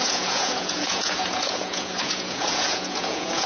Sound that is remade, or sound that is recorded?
remade